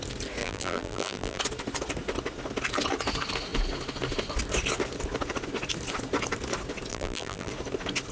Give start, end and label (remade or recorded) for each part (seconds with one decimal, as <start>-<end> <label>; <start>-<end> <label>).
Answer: 0.0-0.4 recorded; 0.4-1.4 remade; 1.4-6.9 recorded; 6.9-7.5 remade; 7.5-8.1 recorded